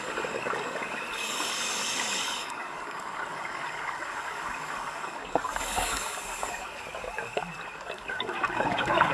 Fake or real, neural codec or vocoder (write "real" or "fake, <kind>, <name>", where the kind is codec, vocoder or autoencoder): fake, codec, DAC